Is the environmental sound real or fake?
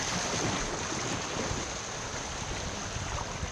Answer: real